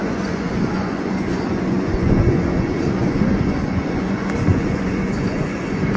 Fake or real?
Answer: fake